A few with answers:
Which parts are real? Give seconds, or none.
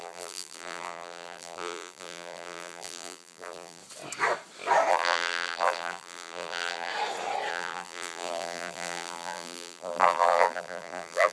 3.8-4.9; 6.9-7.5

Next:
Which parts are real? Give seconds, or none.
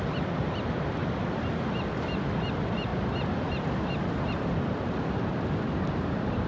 none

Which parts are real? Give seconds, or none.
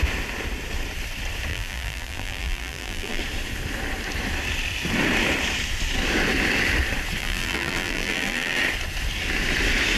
0.0-1.5; 3.2-7.2; 8.6-10.0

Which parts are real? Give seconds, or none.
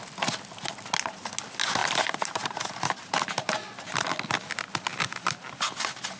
0.0-1.8; 3.5-4.9; 5.7-6.2